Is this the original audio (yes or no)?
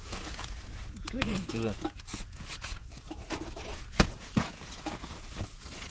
no